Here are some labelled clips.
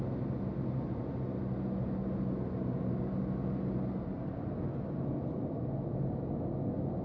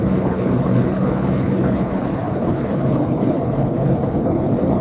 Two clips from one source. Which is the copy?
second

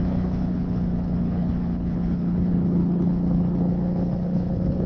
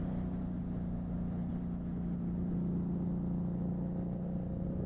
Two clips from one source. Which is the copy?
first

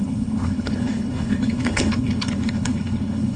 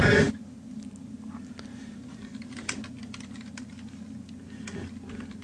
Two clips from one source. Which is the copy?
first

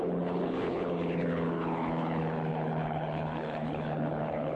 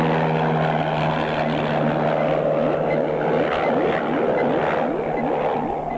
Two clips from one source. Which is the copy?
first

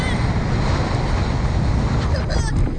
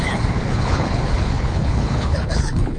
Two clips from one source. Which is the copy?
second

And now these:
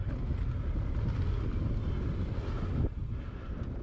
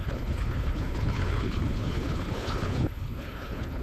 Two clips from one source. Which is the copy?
second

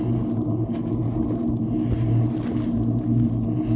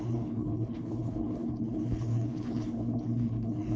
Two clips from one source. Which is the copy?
second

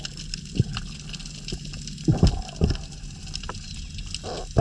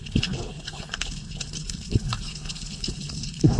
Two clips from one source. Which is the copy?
second